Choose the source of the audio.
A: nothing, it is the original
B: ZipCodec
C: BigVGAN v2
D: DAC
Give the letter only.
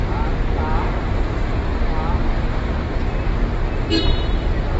A